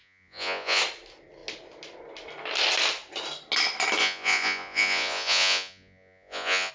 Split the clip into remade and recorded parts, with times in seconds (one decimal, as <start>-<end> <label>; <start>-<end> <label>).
0.0-0.8 remade; 0.8-4.0 recorded; 4.0-6.7 remade